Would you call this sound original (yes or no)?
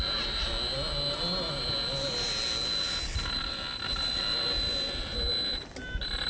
yes